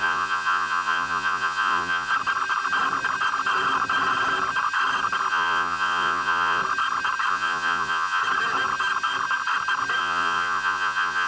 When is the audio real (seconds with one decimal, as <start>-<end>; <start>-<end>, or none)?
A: 2.1-5.3; 6.6-7.3; 8.2-10.0